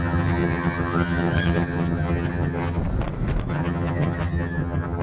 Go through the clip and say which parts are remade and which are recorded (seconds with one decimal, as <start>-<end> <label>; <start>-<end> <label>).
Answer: 0.0-2.8 remade; 2.8-3.5 recorded; 3.5-5.0 remade